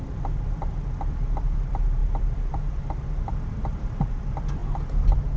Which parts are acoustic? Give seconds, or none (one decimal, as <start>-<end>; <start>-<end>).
4.6-5.4